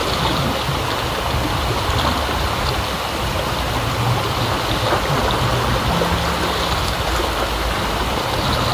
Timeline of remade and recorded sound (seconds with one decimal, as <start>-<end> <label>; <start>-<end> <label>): 0.0-8.7 recorded